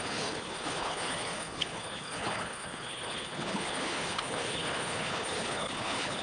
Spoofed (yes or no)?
yes